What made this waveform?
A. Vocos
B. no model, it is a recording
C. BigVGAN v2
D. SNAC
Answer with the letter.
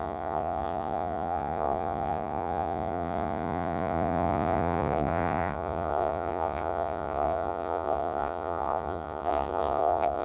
A